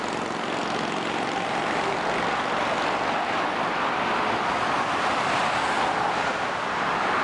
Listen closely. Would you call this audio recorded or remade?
recorded